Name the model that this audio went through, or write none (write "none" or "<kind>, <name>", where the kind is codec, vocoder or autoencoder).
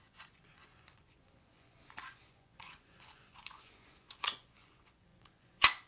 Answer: vocoder, Vocos